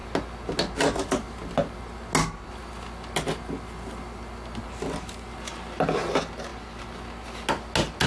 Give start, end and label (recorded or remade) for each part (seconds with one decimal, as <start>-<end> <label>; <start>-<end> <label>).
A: 0.0-8.1 recorded